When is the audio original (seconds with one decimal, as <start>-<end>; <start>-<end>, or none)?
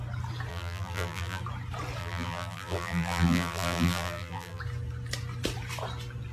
0.0-0.5; 1.4-2.0; 4.6-6.3